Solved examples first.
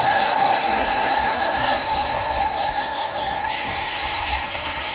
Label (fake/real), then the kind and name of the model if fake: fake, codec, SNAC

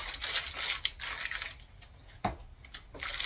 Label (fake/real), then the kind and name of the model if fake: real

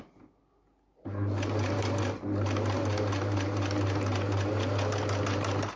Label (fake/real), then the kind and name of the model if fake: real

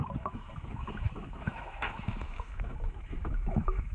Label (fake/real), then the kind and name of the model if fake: fake, autoencoder, DAC-VAE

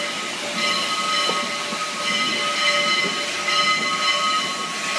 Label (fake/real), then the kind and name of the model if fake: real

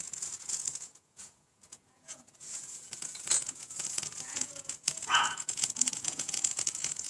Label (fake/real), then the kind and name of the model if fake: fake, vocoder, Vocos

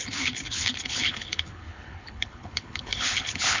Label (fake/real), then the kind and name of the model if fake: fake, codec, HILCodec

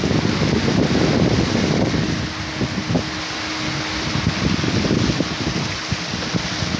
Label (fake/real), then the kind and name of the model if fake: real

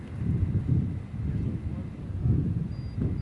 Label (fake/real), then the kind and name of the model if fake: real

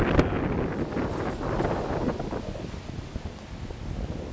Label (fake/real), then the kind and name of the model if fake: real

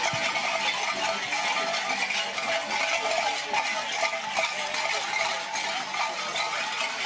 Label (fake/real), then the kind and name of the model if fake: real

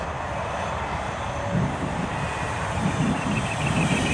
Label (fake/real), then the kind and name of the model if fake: fake, vocoder, BigVGAN v2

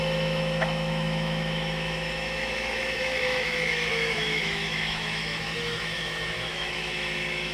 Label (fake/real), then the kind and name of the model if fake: fake, autoencoder, DAC-VAE